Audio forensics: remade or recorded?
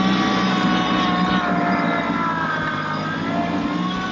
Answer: recorded